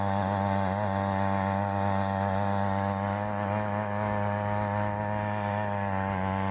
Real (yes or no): yes